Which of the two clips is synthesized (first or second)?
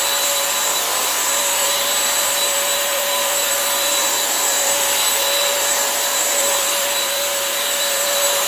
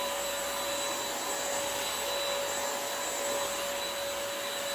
first